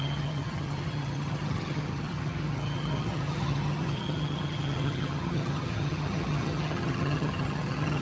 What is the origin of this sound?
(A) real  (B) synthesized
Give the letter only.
B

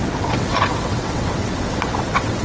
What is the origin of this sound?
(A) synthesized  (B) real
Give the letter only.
A